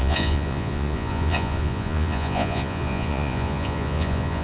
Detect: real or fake fake